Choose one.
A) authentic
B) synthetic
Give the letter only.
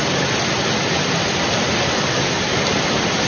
A